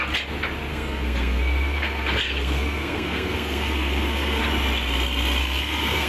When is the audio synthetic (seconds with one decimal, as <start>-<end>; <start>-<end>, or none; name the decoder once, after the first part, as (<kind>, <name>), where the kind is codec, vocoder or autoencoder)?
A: 0.7-4.4 (codec, SNAC); 5.4-6.1